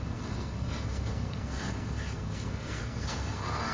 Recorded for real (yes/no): no